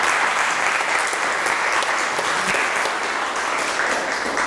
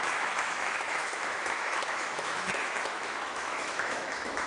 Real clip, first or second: first